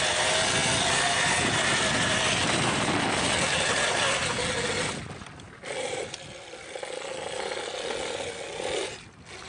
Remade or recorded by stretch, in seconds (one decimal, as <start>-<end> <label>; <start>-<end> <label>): 0.0-9.5 recorded